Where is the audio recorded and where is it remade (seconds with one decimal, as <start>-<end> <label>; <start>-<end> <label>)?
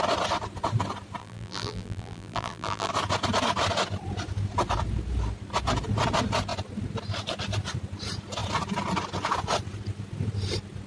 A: 0.0-1.2 recorded; 1.2-2.9 remade; 2.9-10.9 recorded